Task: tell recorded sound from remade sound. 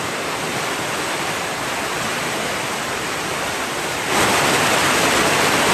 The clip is recorded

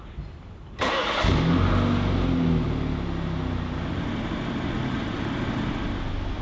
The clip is recorded